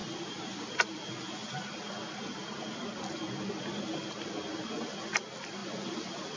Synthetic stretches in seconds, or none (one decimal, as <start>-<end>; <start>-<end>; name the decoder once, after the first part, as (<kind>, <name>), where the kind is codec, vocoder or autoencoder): none